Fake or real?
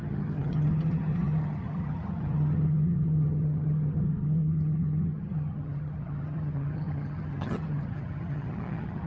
fake